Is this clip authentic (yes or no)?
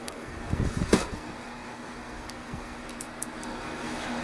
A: no